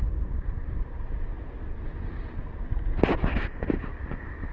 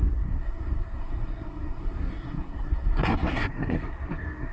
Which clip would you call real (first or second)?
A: first